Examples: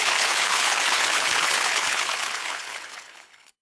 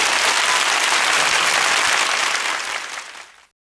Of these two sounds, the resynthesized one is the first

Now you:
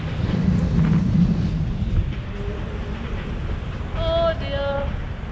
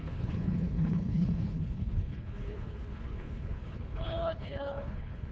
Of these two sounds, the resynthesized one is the second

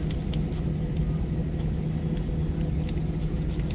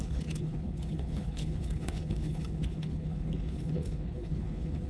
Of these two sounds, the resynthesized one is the second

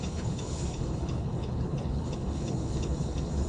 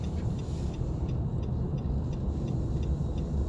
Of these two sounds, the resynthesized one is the first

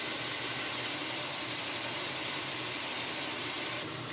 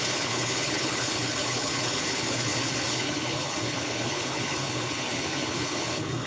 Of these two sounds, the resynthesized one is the second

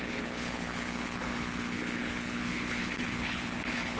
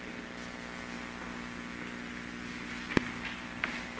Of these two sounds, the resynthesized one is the first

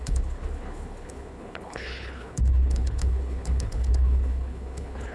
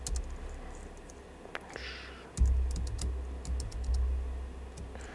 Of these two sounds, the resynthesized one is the first